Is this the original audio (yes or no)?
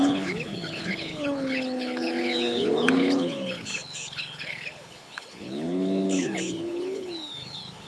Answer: no